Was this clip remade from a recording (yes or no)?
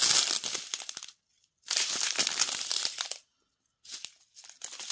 no